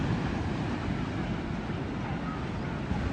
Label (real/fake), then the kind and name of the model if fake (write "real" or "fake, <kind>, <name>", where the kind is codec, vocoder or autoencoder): real